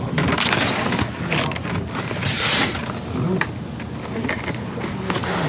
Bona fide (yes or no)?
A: yes